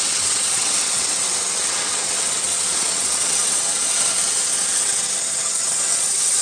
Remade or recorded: remade